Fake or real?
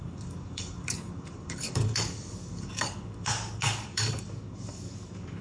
fake